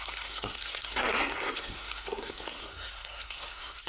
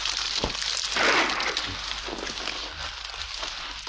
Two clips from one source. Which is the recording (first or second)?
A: second